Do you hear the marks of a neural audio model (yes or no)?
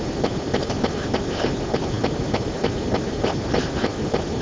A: no